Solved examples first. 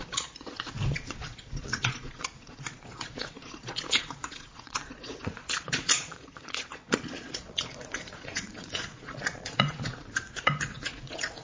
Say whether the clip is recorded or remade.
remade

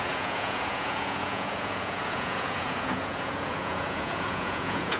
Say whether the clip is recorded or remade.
remade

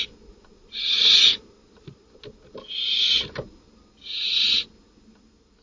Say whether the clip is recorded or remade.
recorded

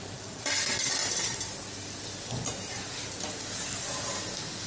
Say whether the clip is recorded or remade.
recorded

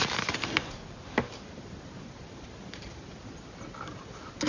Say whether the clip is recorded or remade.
recorded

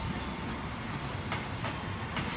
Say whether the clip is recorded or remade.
recorded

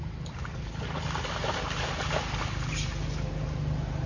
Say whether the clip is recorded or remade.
recorded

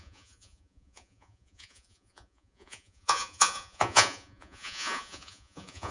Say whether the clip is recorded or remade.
remade